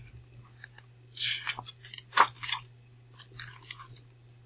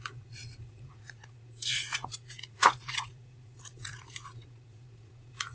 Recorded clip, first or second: first